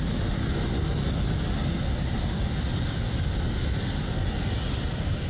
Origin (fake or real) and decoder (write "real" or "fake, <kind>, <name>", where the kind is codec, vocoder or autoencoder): real